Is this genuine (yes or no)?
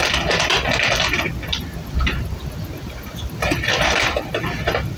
yes